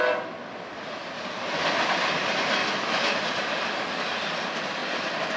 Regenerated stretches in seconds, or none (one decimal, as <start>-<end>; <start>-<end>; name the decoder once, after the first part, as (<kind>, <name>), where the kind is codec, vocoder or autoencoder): 2.6-3.2 (autoencoder, DAC-VAE)